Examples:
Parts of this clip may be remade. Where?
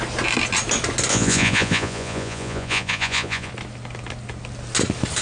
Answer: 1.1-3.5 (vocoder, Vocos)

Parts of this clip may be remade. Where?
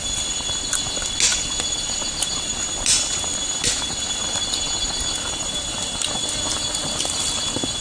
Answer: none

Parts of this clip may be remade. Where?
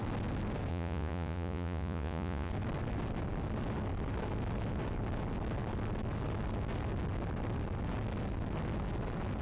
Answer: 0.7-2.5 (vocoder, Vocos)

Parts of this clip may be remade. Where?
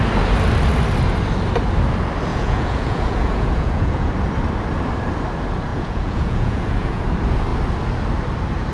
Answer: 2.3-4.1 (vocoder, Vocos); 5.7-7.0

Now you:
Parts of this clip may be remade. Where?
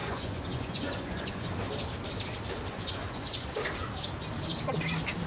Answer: 0.0-1.5 (vocoder, Vocos); 2.7-3.5